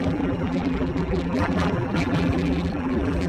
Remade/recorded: remade